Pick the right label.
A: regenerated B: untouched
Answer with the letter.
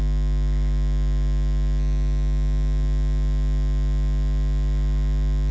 B